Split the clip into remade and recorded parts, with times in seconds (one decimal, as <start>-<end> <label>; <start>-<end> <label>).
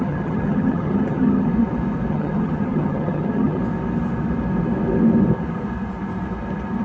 0.0-1.5 remade; 1.5-2.1 recorded; 2.1-3.6 remade; 3.6-6.8 recorded